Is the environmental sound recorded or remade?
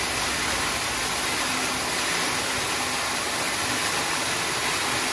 recorded